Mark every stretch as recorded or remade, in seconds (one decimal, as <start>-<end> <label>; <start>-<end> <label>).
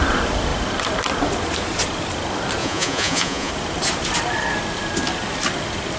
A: 0.0-2.6 recorded; 2.6-3.5 remade; 3.5-6.0 recorded